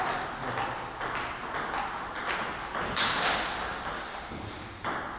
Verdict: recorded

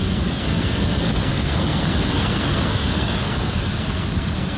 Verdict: remade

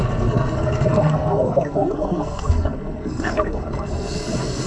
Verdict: remade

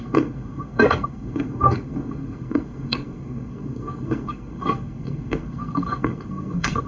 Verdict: remade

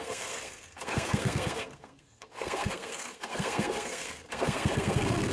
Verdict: remade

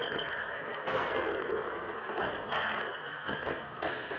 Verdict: remade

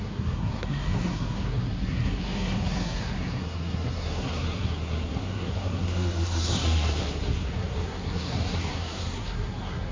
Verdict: remade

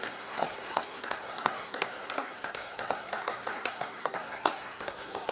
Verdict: remade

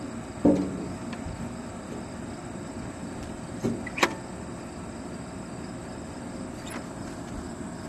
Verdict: recorded